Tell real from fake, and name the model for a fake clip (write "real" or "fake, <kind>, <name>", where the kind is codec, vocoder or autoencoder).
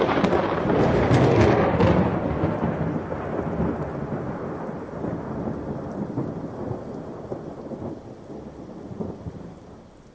real